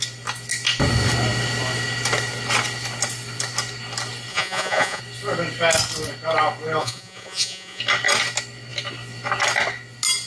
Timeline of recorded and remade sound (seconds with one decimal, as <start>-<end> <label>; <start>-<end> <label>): 0.0-4.3 recorded; 4.3-5.0 remade; 5.0-6.8 recorded; 6.8-7.8 remade; 7.8-10.3 recorded